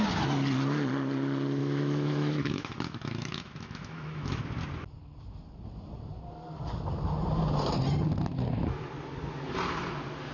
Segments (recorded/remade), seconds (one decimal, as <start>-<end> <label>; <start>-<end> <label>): 0.0-1.6 recorded; 1.6-4.4 remade; 4.4-10.3 recorded